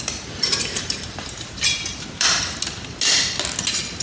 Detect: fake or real real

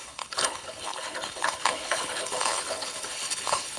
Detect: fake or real fake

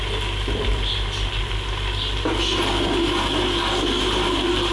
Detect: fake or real real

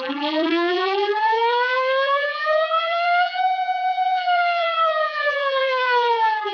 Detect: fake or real fake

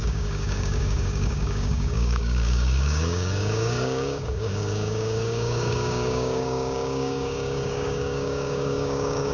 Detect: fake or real fake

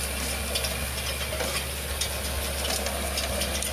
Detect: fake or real real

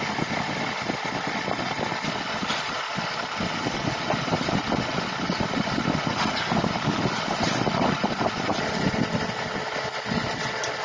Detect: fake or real real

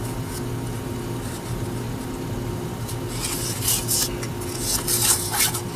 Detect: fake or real real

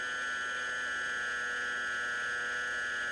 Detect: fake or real real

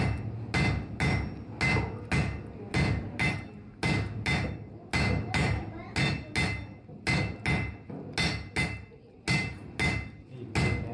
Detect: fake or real real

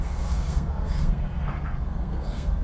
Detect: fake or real fake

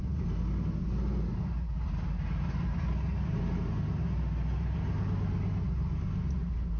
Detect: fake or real real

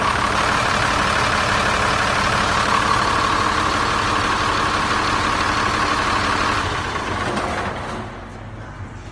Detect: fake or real real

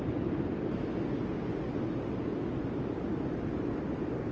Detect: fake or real real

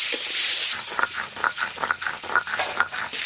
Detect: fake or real real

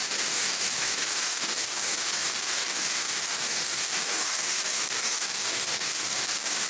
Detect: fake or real fake